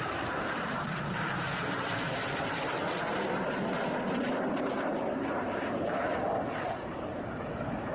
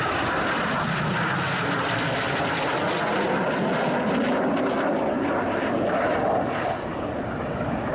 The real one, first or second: second